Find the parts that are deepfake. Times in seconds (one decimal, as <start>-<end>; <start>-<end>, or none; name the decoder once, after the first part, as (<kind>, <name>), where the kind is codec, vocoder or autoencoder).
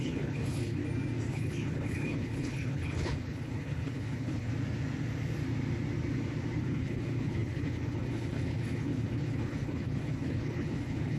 0.0-0.8 (codec, HILCodec); 1.3-4.5; 6.6-11.2